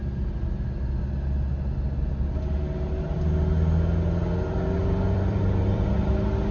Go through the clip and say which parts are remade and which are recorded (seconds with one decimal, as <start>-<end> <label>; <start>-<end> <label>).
0.0-4.8 recorded; 4.8-5.9 remade; 5.9-6.5 recorded